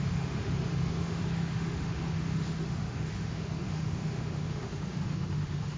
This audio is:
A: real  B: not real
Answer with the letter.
B